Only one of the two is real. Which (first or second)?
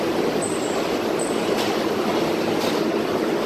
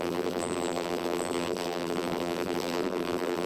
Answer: first